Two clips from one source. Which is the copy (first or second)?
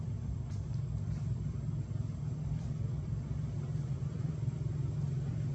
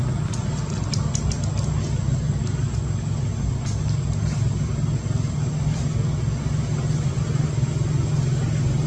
first